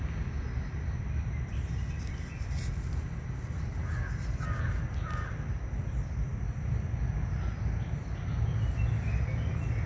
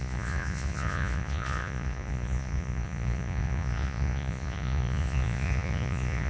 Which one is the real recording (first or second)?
first